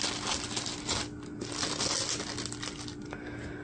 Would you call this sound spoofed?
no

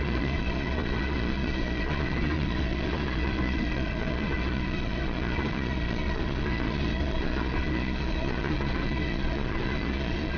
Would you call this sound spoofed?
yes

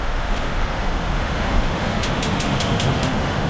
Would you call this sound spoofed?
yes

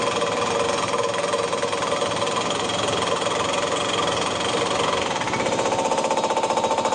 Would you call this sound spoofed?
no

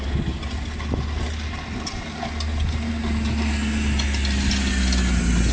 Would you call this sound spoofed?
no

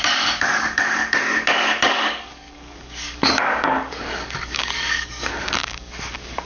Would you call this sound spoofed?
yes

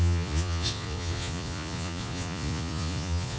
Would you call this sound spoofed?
yes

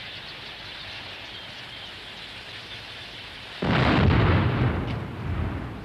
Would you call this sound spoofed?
no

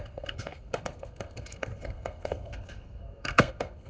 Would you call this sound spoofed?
yes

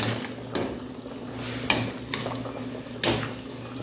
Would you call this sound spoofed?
no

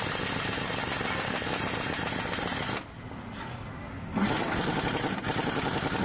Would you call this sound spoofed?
no